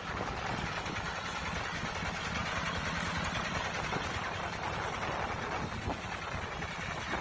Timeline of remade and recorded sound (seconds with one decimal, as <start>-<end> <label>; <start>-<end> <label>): 0.0-2.4 recorded; 2.4-6.7 remade; 6.7-7.2 recorded